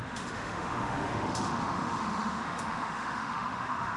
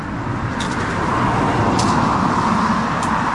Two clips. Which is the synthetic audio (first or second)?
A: first